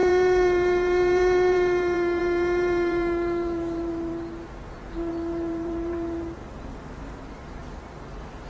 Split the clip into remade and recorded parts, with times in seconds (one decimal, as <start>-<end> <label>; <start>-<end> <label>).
0.0-4.1 remade; 4.1-5.1 recorded; 5.1-8.5 remade